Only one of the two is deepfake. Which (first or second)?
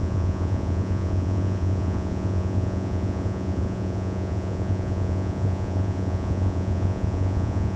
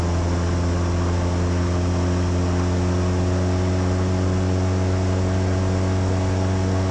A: first